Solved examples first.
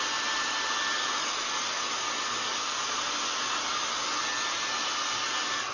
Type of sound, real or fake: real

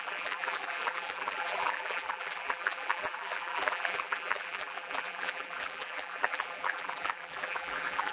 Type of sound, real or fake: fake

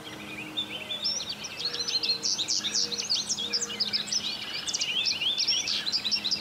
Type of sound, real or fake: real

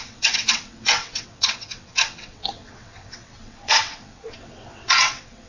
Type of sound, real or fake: fake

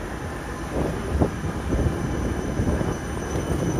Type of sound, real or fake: real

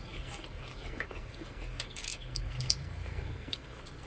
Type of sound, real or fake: fake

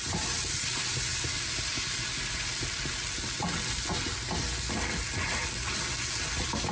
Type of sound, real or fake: real